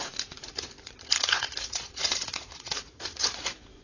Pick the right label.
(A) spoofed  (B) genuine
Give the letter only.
A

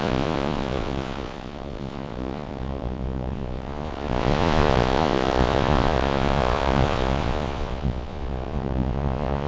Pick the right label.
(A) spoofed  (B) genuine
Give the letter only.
A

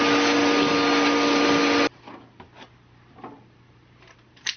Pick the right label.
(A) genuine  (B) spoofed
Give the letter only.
A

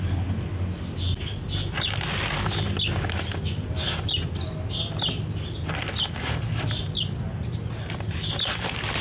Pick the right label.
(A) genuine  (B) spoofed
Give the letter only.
A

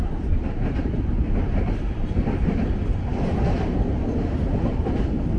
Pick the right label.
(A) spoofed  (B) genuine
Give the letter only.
A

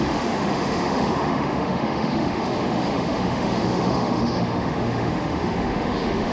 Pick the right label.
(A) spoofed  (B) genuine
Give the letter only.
A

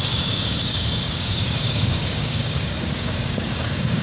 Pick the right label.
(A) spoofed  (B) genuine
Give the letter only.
A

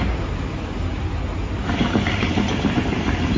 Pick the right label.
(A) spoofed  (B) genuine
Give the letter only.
B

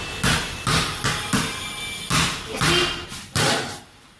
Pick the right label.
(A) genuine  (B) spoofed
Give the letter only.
A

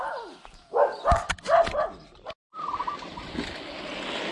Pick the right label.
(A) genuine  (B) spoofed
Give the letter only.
A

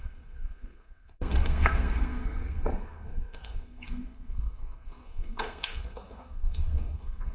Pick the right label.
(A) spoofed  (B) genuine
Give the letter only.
A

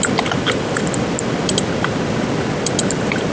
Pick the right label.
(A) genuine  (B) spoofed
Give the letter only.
A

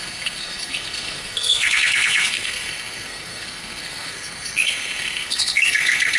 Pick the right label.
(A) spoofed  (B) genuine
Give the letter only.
A